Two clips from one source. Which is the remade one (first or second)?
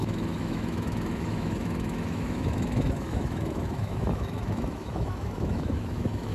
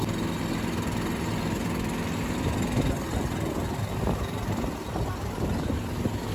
first